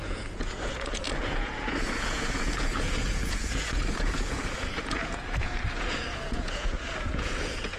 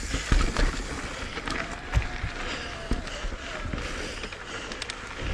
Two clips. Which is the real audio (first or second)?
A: second